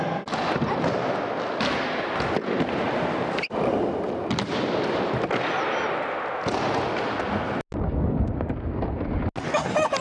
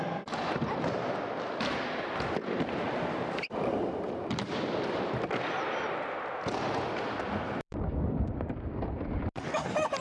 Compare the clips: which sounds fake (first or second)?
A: second